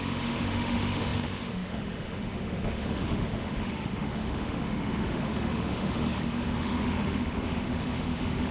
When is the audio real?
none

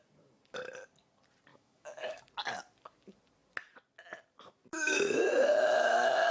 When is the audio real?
0.0-1.5; 2.2-4.7